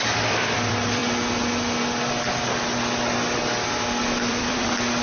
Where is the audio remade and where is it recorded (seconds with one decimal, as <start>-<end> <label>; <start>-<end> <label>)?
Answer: 0.0-1.0 remade; 1.0-4.0 recorded; 4.0-5.0 remade